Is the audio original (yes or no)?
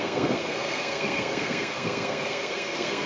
no